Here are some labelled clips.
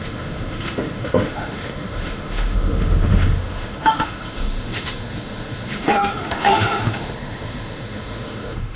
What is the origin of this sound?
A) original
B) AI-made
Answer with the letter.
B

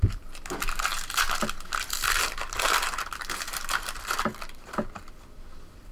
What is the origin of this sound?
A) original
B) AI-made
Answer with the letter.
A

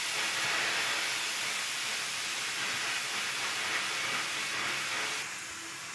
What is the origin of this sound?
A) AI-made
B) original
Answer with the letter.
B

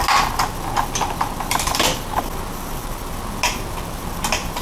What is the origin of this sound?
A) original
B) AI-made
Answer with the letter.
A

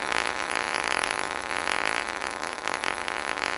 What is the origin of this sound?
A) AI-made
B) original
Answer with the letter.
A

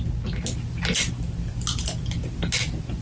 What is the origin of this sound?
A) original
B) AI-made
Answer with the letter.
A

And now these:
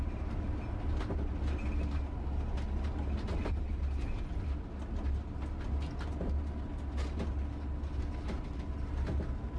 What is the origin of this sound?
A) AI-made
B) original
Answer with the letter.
B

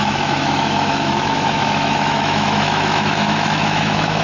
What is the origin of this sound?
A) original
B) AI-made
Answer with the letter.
B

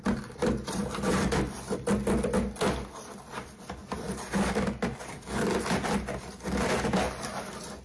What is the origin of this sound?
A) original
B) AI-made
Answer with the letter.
A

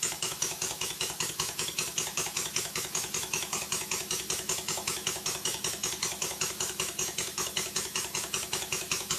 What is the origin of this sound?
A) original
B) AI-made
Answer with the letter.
B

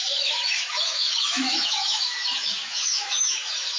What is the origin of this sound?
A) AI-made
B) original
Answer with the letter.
A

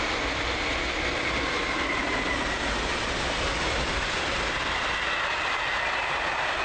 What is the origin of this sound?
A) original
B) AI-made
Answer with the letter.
A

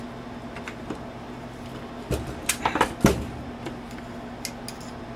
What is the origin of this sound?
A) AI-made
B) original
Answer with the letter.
B